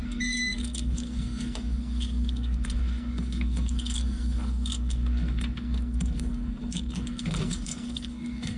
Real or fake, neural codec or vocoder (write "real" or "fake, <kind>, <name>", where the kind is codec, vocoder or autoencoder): fake, codec, SNAC